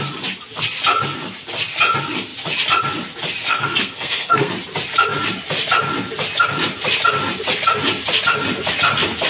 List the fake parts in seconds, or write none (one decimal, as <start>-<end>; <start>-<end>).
3.4-4.5